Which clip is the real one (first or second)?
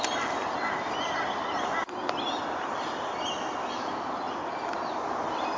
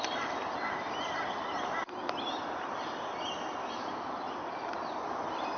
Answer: first